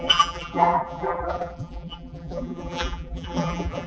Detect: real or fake fake